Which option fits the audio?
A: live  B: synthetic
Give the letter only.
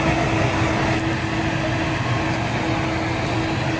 A